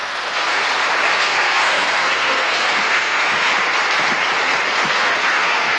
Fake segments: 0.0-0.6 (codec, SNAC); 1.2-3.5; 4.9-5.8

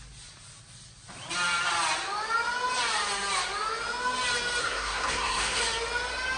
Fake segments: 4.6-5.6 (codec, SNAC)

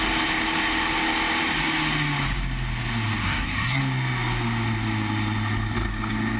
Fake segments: 3.2-3.8 (codec, SNAC)

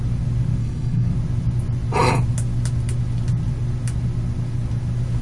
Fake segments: 0.6-1.1 (codec, HILCodec)

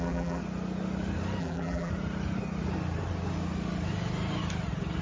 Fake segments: 0.0-0.4 (vocoder, BigVGAN v2); 1.4-1.9

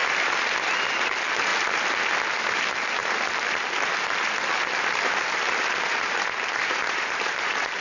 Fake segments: 0.9-1.5 (vocoder, BigVGAN v2); 2.6-3.0; 5.6-7.8

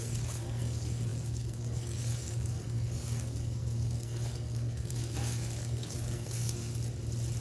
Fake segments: 0.0-6.7 (codec, SNAC)

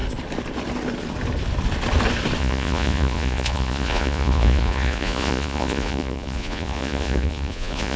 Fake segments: 2.4-8.0 (vocoder, Vocos)